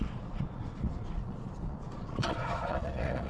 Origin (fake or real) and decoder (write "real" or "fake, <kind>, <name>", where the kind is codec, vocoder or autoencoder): fake, vocoder, Vocos